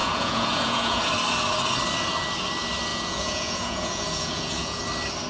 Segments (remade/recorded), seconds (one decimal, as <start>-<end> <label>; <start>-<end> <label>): 0.0-1.0 remade; 1.0-2.9 recorded; 2.9-4.8 remade; 4.8-5.3 recorded